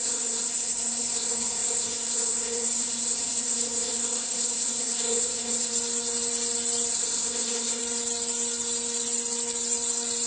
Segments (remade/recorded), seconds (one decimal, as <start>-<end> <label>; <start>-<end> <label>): 0.0-5.7 remade; 5.7-6.9 recorded; 6.9-7.8 remade; 7.8-10.3 recorded